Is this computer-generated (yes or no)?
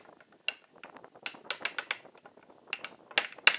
no